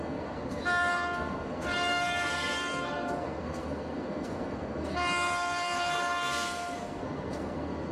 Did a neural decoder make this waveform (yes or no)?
yes